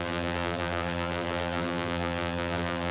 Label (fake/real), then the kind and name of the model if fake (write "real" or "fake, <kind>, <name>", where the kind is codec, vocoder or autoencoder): fake, vocoder, BigVGAN v2